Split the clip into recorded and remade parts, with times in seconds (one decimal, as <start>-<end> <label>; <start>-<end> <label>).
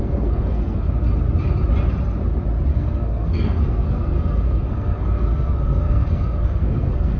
0.0-0.9 remade; 0.9-2.7 recorded; 2.7-7.2 remade